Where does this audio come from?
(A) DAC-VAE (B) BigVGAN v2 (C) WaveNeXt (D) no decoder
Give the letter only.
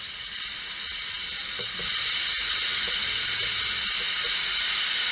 B